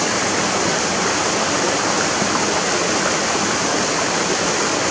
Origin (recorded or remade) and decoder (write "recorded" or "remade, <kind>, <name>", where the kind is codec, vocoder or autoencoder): recorded